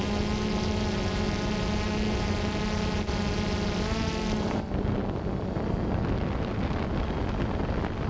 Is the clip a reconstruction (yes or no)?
no